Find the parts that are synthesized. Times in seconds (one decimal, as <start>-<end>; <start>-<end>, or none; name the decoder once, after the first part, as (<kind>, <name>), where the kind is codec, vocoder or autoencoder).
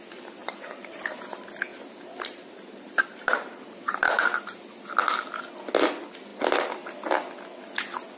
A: 0.4-1.2 (vocoder, BigVGAN v2); 1.7-4.2